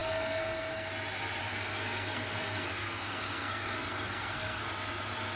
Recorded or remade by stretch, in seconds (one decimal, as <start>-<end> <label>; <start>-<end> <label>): 0.0-0.9 remade; 0.9-1.4 recorded; 1.4-4.6 remade; 4.6-5.4 recorded